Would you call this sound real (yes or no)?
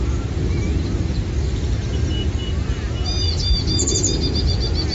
yes